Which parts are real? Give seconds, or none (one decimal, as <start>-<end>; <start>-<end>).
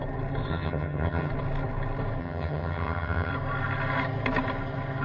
0.0-0.5; 1.3-2.2; 3.3-5.0